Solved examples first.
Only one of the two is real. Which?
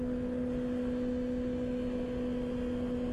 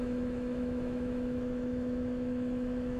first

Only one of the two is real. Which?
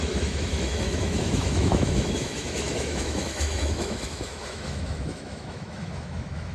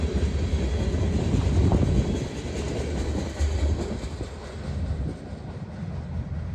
second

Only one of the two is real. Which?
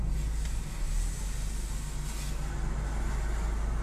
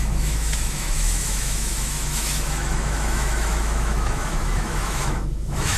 first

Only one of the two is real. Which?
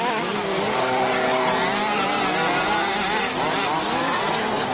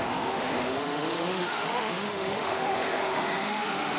first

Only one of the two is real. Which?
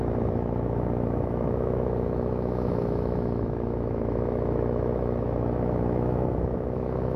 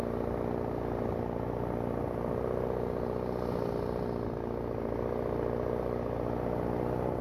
second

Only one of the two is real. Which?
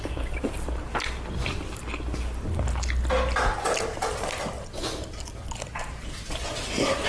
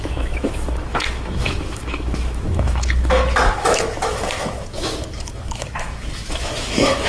first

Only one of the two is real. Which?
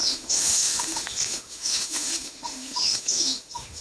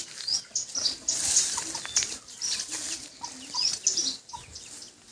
second